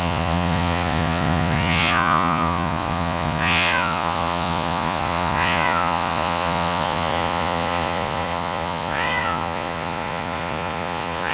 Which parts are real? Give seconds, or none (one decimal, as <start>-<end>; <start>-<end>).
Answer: none